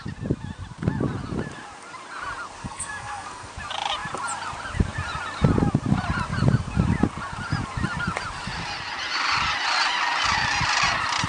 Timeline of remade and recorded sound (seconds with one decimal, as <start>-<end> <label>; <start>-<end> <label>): 0.0-2.6 recorded; 2.6-3.5 remade; 3.5-11.3 recorded

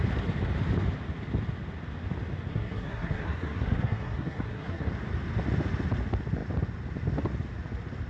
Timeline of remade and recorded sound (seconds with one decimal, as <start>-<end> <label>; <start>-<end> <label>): 0.0-2.5 recorded; 2.5-4.9 remade; 4.9-8.1 recorded